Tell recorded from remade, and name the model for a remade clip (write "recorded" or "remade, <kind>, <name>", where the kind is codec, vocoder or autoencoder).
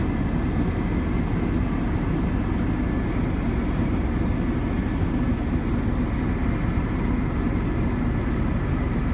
recorded